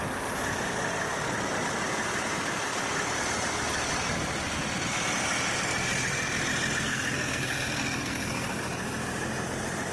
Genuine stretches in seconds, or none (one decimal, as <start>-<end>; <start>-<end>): 0.0-6.8; 8.6-9.9